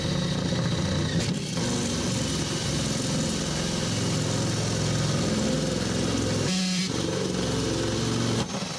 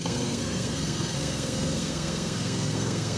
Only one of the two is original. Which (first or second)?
first